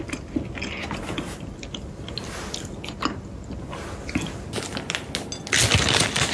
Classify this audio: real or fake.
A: real